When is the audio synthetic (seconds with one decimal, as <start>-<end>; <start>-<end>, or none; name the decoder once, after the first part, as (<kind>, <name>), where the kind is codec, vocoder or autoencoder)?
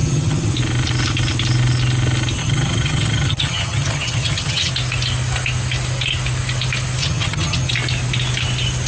0.0-0.5 (vocoder, HiFi-GAN); 2.4-4.7; 7.0-7.7